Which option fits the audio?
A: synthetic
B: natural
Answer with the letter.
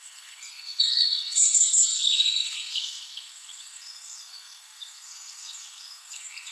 A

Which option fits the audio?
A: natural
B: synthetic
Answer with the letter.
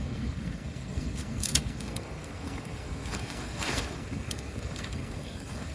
B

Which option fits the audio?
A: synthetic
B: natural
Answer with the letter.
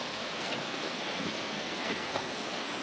A